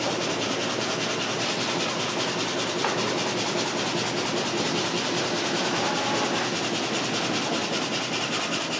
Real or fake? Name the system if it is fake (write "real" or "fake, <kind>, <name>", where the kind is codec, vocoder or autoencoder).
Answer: real